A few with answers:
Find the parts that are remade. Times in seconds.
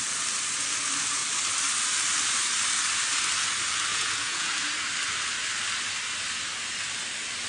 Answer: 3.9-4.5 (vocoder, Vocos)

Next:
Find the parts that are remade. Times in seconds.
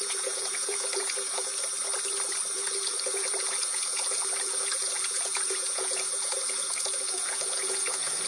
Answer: 0.0-1.5 (vocoder, Vocos); 2.5-8.3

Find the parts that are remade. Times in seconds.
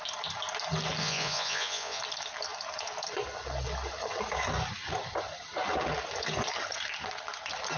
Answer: 1.0-2.0 (vocoder, Vocos)